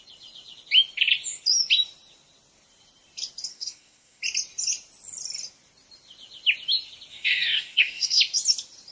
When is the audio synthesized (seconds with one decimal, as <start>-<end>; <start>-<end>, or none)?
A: 3.5-4.2; 7.1-8.2